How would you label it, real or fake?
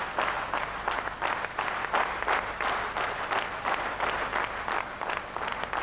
real